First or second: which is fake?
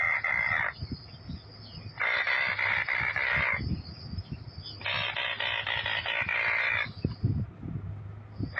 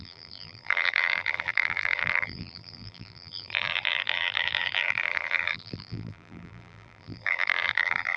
second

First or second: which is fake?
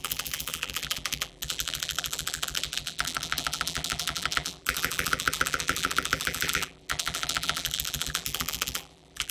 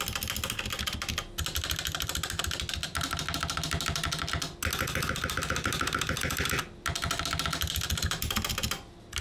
first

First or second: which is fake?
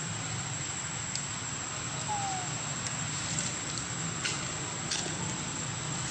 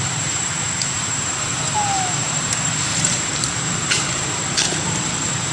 second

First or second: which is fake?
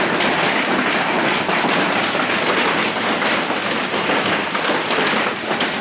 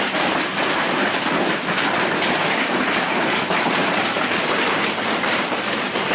second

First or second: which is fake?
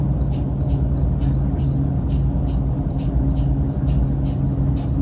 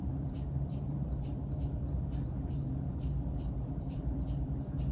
second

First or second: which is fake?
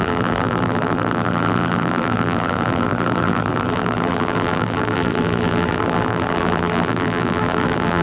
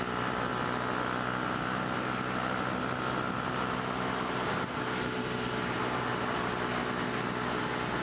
first